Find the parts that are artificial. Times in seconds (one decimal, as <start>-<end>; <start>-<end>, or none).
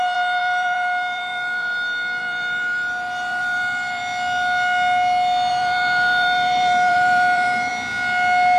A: 0.0-4.0; 5.5-7.7